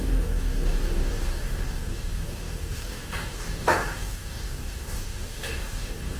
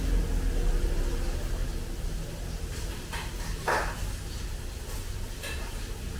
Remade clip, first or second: first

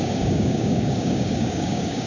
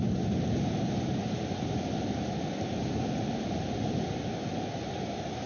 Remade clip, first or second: first